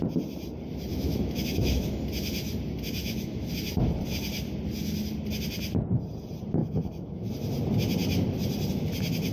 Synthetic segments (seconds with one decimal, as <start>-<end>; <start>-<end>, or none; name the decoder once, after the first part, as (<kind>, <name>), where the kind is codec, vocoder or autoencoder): 0.9-2.0 (autoencoder, DAC-VAE); 3.0-3.5; 6.6-7.3